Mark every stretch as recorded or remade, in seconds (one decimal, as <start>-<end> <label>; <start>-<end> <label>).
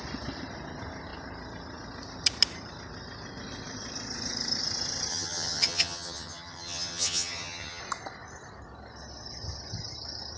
0.0-5.1 recorded; 5.1-7.8 remade; 7.8-10.4 recorded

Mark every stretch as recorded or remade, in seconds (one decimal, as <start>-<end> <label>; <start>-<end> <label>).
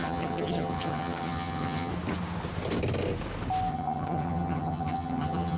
0.0-1.9 remade; 1.9-3.7 recorded; 3.7-5.6 remade